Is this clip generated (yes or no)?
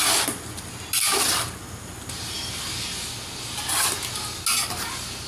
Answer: no